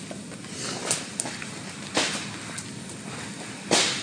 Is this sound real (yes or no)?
yes